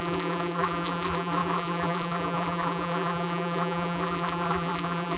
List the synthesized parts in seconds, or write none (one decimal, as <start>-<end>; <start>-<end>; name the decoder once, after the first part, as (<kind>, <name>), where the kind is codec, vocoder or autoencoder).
0.0-5.2 (vocoder, BigVGAN v2)